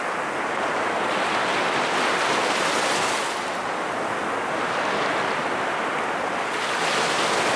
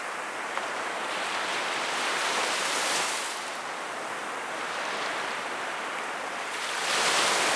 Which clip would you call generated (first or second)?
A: second